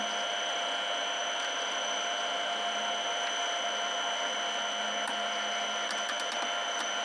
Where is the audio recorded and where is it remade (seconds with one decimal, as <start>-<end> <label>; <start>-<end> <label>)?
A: 0.0-7.0 recorded